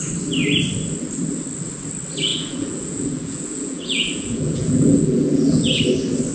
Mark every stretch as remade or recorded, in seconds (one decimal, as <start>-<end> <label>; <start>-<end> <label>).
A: 0.0-2.3 recorded; 2.3-5.8 remade; 5.8-6.3 recorded